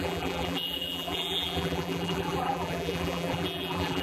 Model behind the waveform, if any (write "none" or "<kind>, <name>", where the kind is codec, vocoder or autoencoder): vocoder, BigVGAN v2